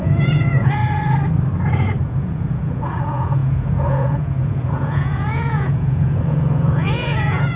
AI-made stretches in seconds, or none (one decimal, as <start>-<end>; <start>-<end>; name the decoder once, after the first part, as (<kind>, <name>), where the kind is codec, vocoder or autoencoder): 0.0-0.8 (vocoder, Vocos); 2.0-7.6